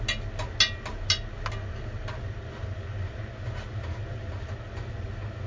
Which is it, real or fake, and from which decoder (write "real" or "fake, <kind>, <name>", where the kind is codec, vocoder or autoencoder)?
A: real